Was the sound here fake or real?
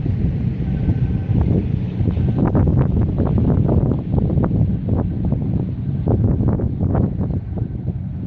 real